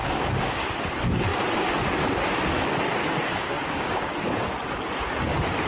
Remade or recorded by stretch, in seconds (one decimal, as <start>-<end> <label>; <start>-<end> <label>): 0.0-0.6 remade; 0.6-3.0 recorded; 3.0-4.0 remade; 4.0-5.7 recorded